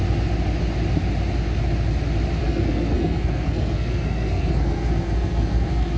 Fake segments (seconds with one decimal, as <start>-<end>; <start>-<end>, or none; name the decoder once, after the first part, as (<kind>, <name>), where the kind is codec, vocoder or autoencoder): 2.4-6.0 (codec, SNAC)